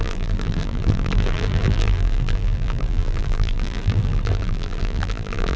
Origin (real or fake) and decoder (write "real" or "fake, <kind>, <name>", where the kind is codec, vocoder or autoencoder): fake, vocoder, BigVGAN v2